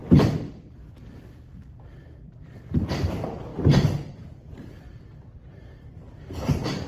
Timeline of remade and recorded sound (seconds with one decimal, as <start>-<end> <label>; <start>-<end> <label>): 0.0-0.9 recorded; 0.9-3.5 remade; 3.5-4.1 recorded; 4.1-6.0 remade; 6.0-6.5 recorded; 6.5-6.9 remade